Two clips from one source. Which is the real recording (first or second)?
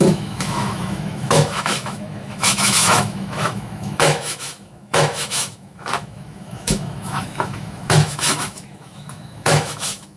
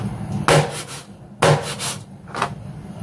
second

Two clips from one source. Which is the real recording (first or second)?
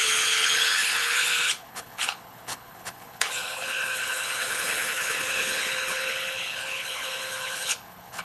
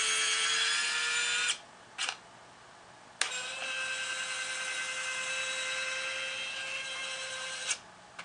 second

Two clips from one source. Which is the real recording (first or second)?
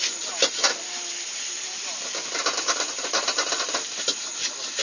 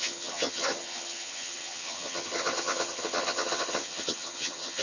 first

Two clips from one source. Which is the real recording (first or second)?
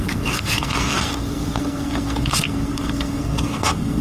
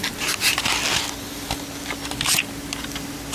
second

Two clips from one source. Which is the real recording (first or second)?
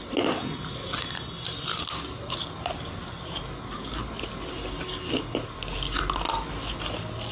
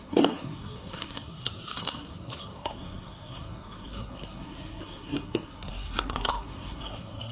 first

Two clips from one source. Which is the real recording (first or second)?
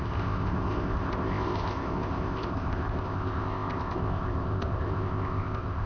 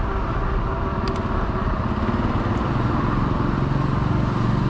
second